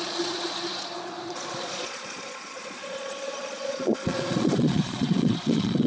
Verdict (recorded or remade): remade